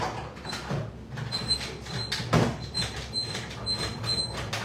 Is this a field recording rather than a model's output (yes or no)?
yes